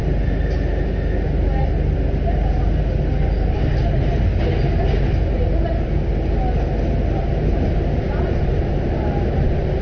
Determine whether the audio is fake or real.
real